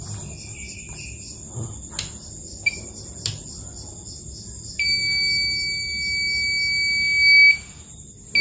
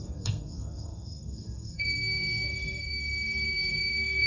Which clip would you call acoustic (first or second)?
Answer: first